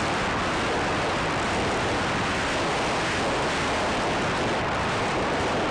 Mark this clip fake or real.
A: real